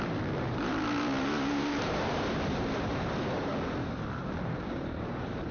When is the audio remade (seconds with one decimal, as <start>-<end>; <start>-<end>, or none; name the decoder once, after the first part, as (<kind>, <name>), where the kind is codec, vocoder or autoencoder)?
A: 0.0-3.5 (vocoder, BigVGAN v2); 4.2-5.5